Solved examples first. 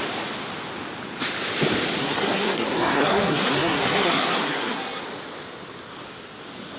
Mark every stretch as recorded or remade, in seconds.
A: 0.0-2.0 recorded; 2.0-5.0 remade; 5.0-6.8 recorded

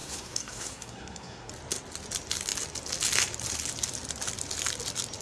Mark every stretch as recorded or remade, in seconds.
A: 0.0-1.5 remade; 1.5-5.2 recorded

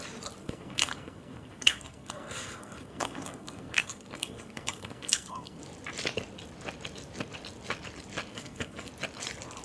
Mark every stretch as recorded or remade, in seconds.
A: 0.0-0.4 recorded; 0.4-5.6 remade; 5.6-8.3 recorded; 8.3-8.9 remade; 8.9-9.6 recorded